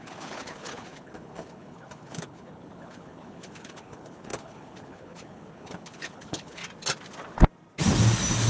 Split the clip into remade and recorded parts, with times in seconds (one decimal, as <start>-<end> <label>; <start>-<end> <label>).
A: 0.0-6.6 remade; 6.6-8.5 recorded